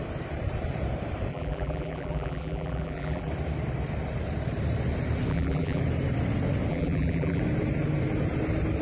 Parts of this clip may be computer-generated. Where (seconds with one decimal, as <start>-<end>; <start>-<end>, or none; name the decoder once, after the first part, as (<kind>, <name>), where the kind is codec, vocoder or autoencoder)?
1.3-3.3 (vocoder, BigVGAN v2); 5.3-5.8; 6.7-7.4